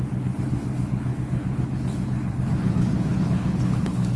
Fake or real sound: fake